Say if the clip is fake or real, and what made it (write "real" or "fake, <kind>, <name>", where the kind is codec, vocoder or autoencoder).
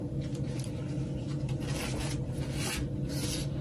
real